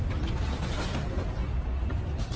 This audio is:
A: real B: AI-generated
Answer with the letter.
A